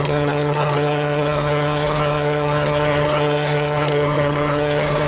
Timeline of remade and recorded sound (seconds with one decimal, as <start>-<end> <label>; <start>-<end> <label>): 0.0-5.1 remade